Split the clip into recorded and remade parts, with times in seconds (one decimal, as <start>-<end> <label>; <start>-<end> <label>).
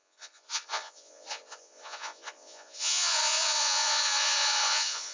0.0-5.1 remade